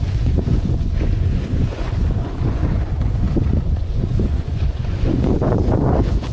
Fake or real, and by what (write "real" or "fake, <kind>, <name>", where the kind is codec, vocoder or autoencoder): fake, vocoder, Vocos